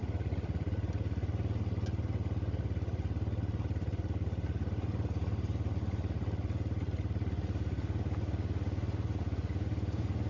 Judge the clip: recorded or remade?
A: recorded